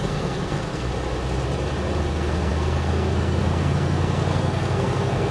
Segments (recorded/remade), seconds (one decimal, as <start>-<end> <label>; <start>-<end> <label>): 0.0-0.9 remade; 0.9-2.0 recorded; 2.0-5.3 remade